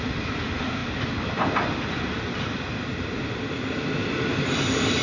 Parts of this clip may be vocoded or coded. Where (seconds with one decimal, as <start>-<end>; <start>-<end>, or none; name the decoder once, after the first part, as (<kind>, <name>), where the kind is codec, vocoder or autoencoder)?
none